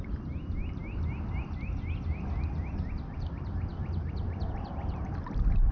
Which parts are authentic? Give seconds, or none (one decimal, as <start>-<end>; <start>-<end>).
0.0-5.7